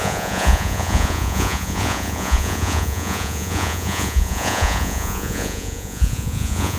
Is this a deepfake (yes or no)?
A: yes